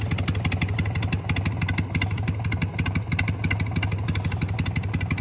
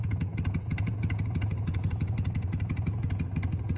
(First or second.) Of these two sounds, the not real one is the second